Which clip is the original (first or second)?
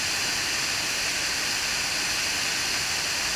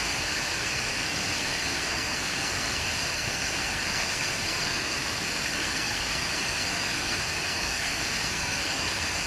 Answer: first